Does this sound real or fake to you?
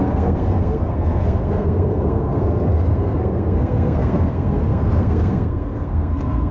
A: fake